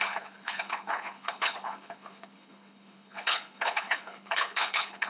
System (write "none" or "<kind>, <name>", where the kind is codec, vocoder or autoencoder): codec, HILCodec